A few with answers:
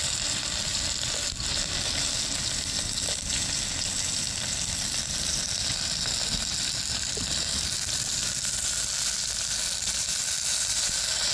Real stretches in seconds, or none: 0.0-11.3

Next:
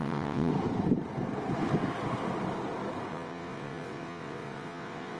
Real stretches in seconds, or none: 0.5-3.1

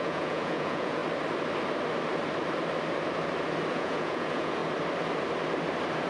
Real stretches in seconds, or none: 1.0-3.7; 4.6-6.1

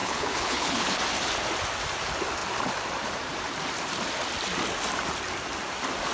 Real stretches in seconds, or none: 1.0-6.1

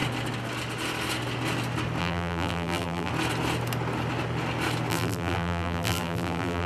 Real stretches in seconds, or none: 0.0-2.0; 3.1-4.9

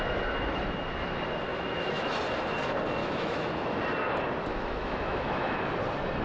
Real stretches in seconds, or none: 0.0-1.5; 2.1-3.0; 3.8-4.5; 5.7-6.2